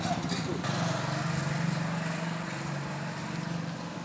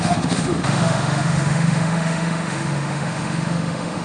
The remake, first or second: second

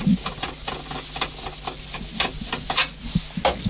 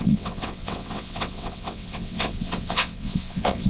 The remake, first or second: second